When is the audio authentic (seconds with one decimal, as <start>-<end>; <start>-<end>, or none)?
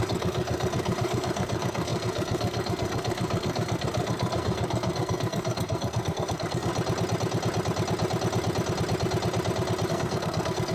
6.7-9.9